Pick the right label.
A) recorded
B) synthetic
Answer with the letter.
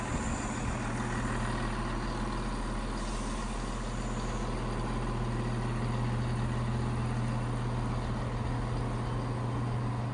A